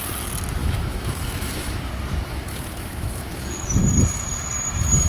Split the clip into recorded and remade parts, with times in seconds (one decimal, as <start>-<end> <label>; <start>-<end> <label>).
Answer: 0.0-0.6 recorded; 0.6-1.9 remade; 1.9-2.3 recorded; 2.3-3.8 remade; 3.8-5.1 recorded